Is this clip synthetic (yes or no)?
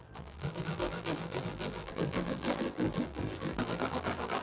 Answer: yes